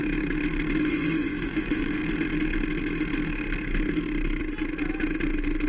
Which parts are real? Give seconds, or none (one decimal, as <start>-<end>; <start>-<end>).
0.0-0.8; 2.0-5.7